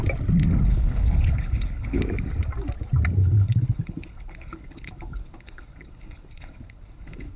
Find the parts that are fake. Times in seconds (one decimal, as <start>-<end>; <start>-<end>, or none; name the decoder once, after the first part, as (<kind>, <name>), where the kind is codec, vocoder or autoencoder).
0.7-2.0 (codec, HILCodec); 3.2-7.4